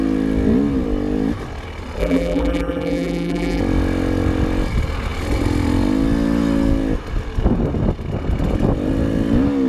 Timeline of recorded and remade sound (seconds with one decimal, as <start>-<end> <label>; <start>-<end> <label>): 0.0-2.0 recorded; 2.0-3.6 remade; 3.6-9.7 recorded